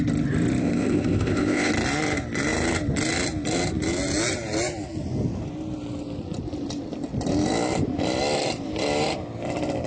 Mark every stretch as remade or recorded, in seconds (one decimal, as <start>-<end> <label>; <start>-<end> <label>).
0.0-0.6 recorded; 0.6-1.7 remade; 1.7-9.9 recorded